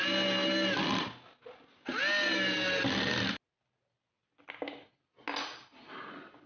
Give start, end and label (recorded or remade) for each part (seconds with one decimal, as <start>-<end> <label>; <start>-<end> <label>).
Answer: 0.0-6.5 recorded

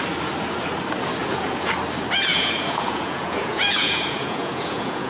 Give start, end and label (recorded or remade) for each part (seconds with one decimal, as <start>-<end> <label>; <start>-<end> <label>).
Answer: 0.0-1.2 recorded; 1.2-1.7 remade; 1.7-2.3 recorded; 2.3-5.1 remade

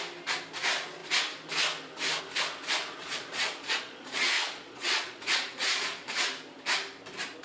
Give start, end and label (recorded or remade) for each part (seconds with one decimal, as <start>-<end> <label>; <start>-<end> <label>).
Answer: 0.0-3.0 recorded; 3.0-6.3 remade; 6.3-7.4 recorded

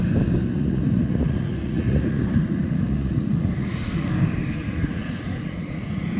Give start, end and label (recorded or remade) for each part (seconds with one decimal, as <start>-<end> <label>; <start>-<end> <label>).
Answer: 0.0-0.4 recorded; 0.4-4.1 remade; 4.1-4.6 recorded; 4.6-6.2 remade

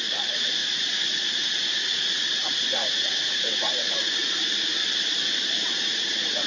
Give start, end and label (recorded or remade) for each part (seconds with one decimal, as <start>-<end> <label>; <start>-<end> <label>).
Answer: 0.0-4.8 remade; 4.8-5.7 recorded; 5.7-6.5 remade

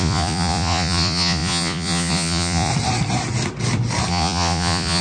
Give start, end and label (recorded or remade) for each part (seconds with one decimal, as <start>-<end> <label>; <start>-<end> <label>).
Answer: 0.0-2.7 remade; 2.7-4.1 recorded; 4.1-5.0 remade